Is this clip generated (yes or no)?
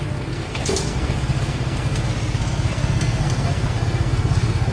yes